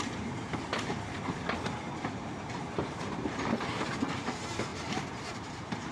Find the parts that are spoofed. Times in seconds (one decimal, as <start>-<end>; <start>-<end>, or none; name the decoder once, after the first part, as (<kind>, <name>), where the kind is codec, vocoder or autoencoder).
0.0-0.7 (vocoder, BigVGAN v2); 2.1-5.9